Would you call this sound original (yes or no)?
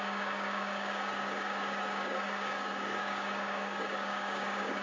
no